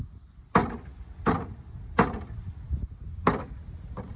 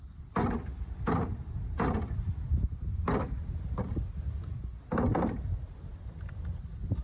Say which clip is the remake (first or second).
second